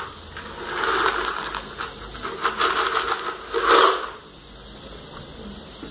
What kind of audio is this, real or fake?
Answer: real